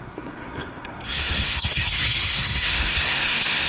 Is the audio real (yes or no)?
no